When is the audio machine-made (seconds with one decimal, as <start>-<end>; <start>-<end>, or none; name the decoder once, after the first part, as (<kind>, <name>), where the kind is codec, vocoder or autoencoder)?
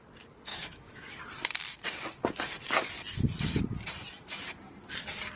0.5-1.1 (autoencoder, DAC-VAE)